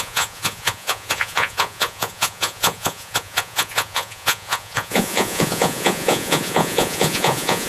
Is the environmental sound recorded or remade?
remade